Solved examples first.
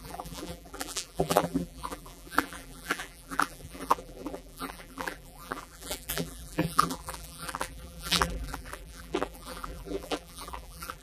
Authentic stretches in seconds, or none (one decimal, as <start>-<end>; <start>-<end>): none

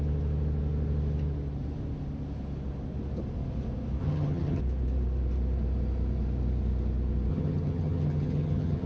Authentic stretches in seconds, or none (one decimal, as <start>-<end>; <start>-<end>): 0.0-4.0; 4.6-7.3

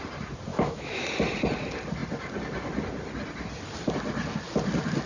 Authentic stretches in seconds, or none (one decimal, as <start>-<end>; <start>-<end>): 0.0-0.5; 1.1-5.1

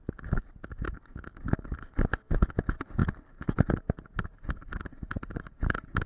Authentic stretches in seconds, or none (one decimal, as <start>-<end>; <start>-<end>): 0.0-6.1

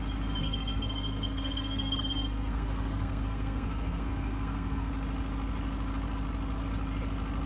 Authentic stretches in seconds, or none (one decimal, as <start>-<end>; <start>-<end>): 0.0-0.4; 4.9-7.5

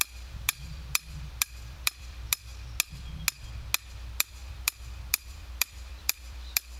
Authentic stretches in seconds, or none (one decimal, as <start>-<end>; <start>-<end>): 2.5-4.0